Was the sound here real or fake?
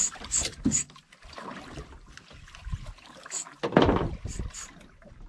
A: real